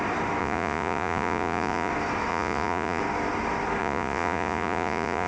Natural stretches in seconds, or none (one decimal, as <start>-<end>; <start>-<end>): 0.0-0.4; 1.9-2.3; 3.0-3.8